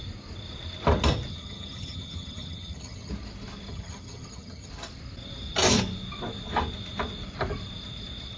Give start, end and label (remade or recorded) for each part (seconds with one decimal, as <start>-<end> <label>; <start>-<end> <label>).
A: 0.0-1.3 recorded; 1.3-3.1 remade; 3.1-3.7 recorded; 3.7-4.7 remade; 4.7-8.4 recorded